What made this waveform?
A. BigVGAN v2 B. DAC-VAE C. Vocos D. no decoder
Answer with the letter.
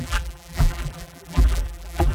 A